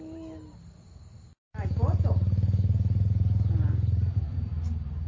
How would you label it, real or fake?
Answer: real